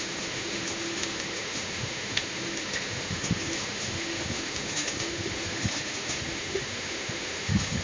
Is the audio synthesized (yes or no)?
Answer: yes